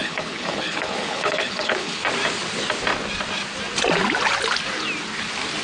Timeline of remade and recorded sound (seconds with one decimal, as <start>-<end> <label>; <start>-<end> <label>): 0.0-2.0 remade; 2.0-5.6 recorded